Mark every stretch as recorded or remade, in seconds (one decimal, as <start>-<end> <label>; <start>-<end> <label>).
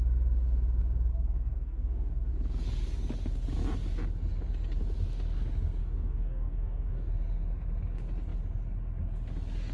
0.0-1.1 recorded; 1.1-2.3 remade; 2.3-5.8 recorded; 5.8-7.1 remade; 7.1-9.7 recorded